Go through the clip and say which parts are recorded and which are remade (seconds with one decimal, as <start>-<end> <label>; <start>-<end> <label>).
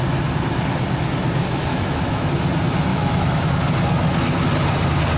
0.0-1.7 recorded; 1.7-2.3 remade; 2.3-2.9 recorded; 2.9-3.5 remade; 3.5-5.2 recorded